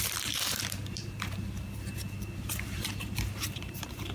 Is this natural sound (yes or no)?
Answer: no